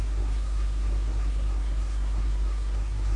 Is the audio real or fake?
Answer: fake